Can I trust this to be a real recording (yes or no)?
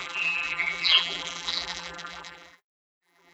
no